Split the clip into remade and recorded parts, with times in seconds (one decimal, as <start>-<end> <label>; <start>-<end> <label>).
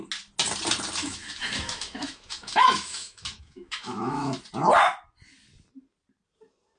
0.0-1.0 recorded; 1.0-4.4 remade; 4.4-6.8 recorded